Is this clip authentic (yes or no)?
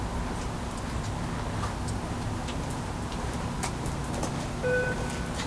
yes